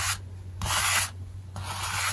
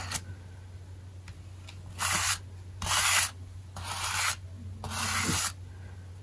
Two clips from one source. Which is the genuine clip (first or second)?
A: second